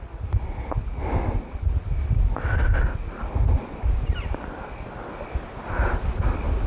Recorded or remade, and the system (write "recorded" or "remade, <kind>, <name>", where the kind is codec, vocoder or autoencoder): recorded